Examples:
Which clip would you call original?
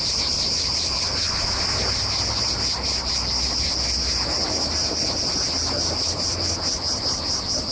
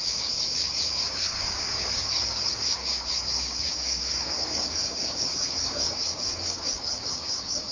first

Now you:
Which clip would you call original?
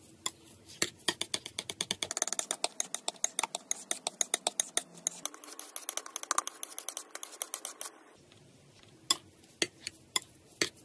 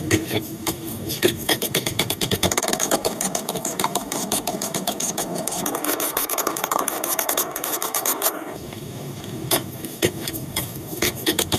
first